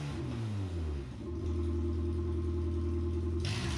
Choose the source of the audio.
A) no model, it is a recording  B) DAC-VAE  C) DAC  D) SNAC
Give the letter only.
A